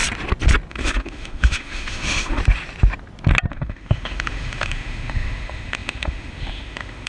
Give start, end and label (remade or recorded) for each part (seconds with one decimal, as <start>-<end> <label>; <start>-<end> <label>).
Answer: 0.0-0.7 recorded; 0.7-2.4 remade; 2.4-3.5 recorded; 3.5-7.1 remade